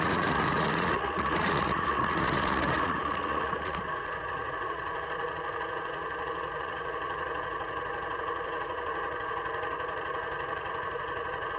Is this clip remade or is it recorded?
remade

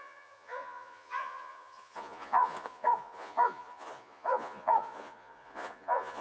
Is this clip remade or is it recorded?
remade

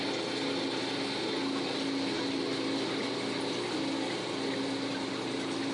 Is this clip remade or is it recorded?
recorded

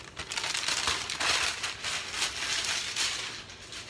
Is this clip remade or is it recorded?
recorded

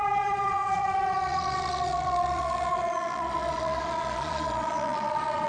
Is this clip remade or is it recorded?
remade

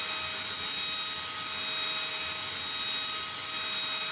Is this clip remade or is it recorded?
recorded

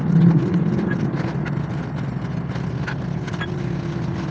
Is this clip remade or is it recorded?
recorded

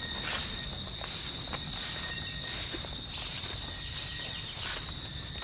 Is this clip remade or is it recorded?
recorded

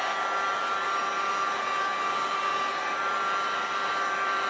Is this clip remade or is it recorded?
recorded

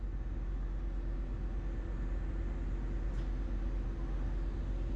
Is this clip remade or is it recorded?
recorded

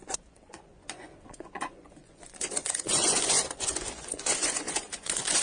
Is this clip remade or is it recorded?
remade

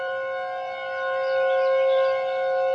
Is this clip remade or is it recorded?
recorded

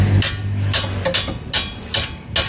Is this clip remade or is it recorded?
recorded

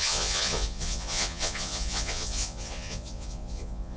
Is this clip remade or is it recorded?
remade